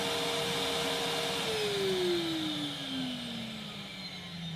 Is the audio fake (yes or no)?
no